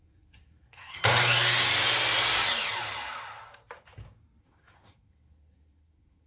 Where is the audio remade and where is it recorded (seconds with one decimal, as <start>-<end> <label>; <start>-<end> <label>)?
0.0-1.0 remade; 1.0-4.4 recorded; 4.4-6.3 remade